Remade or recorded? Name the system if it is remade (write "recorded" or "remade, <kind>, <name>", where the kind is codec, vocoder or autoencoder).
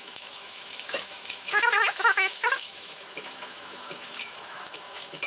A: remade, autoencoder, DAC-VAE